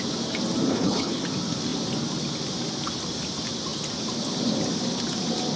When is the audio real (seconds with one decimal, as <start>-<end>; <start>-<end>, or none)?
0.0-0.7; 1.2-5.6